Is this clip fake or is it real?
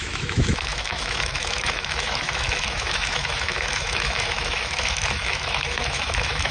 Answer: fake